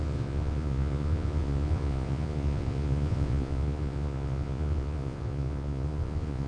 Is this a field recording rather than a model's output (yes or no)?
no